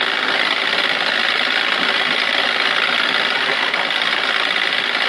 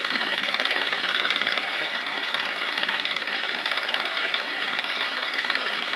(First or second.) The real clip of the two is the first